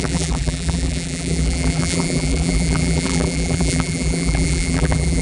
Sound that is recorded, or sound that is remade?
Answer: remade